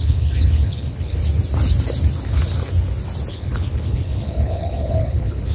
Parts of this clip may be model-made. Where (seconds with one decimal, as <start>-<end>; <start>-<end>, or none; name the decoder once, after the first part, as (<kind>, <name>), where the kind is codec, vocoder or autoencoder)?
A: 0.0-1.2 (codec, HILCodec); 3.3-5.5